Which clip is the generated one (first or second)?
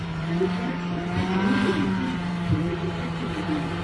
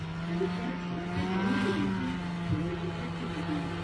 first